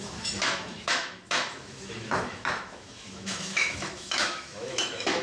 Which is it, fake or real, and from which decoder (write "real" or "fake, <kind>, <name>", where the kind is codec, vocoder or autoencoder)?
fake, autoencoder, DAC-VAE